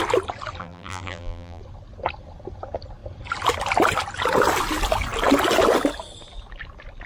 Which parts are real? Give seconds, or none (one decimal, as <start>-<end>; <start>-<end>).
0.0-0.6; 1.6-7.1